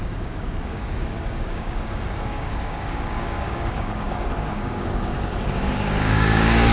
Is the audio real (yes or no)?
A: no